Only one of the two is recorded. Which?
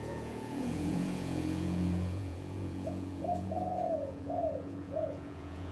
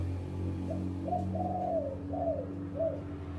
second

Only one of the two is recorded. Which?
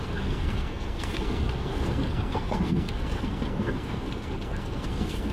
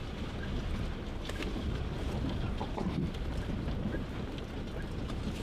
second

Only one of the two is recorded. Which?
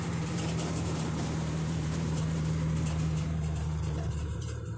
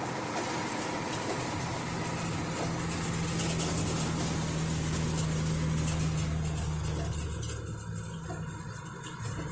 second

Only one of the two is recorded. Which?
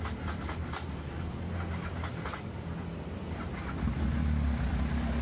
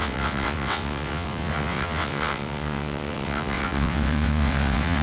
first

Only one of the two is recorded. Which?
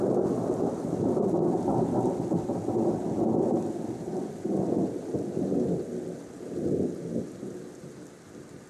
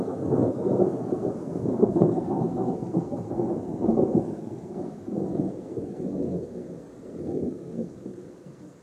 first